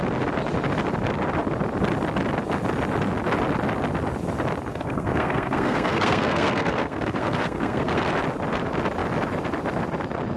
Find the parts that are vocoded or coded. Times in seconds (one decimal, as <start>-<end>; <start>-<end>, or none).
4.7-8.0